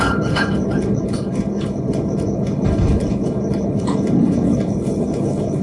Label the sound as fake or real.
fake